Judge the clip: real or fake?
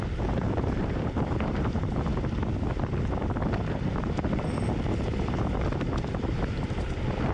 fake